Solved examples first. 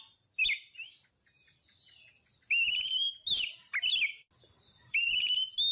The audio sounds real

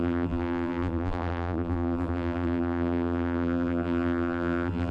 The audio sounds fake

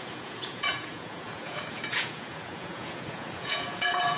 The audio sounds fake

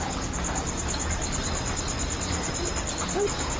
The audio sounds real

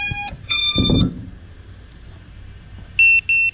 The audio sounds real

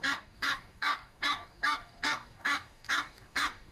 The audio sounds fake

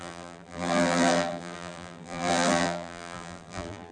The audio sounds fake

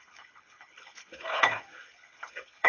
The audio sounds fake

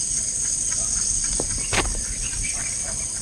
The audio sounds real